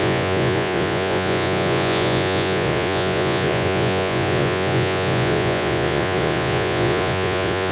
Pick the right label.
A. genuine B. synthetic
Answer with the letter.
B